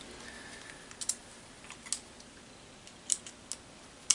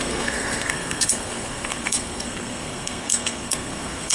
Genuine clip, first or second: first